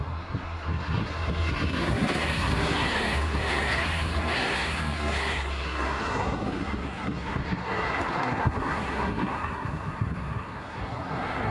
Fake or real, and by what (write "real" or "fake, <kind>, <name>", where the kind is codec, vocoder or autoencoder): fake, codec, SNAC